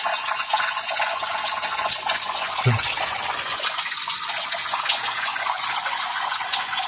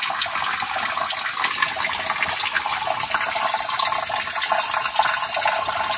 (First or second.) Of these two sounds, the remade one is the first